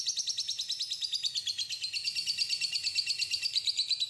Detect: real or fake real